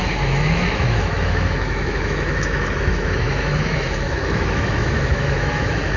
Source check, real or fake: fake